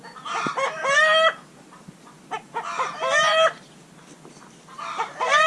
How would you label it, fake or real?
real